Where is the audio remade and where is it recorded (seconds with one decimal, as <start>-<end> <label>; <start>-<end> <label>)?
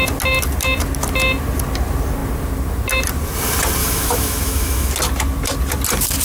0.0-3.8 recorded; 3.8-4.9 remade; 4.9-6.2 recorded